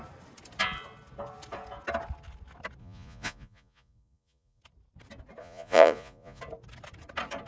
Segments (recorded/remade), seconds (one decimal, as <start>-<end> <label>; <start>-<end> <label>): 0.0-2.8 recorded; 2.8-4.6 remade; 4.6-5.4 recorded; 5.4-6.4 remade; 6.4-7.5 recorded